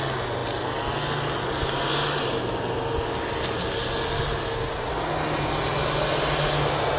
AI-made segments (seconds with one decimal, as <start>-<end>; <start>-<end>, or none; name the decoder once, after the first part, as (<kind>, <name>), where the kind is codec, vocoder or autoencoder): none